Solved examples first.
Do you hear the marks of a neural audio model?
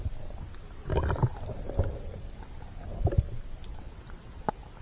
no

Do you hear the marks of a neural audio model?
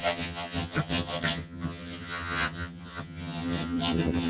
yes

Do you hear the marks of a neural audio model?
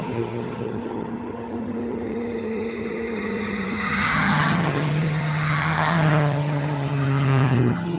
yes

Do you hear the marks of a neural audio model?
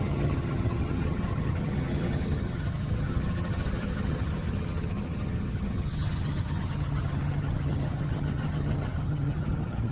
yes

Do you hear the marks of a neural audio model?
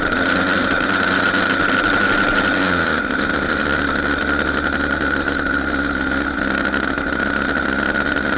no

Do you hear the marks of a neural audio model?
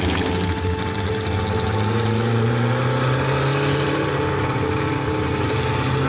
no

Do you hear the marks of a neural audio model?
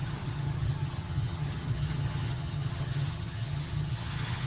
yes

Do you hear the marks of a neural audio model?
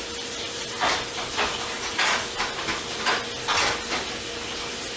no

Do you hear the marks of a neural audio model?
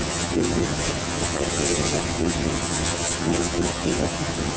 yes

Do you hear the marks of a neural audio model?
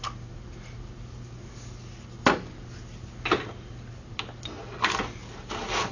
no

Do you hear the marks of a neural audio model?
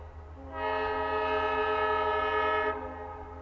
no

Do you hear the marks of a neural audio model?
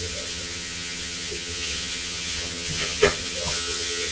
yes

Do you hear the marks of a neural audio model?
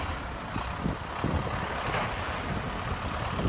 no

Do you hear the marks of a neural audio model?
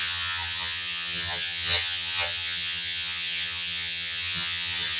yes